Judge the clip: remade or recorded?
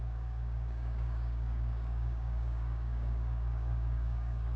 remade